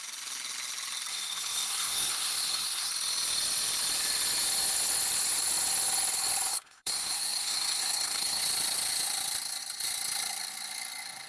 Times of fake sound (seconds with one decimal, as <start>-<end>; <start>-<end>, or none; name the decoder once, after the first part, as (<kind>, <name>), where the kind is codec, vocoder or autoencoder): 1.1-2.9 (codec, SNAC); 6.5-8.4